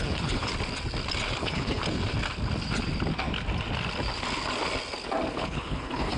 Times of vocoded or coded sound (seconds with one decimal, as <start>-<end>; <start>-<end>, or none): 0.0-0.5; 1.4-1.8; 5.3-6.2